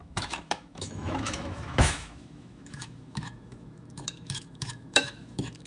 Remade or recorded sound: remade